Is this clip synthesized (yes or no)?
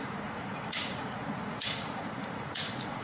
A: yes